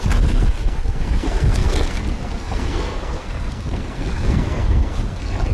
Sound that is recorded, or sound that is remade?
remade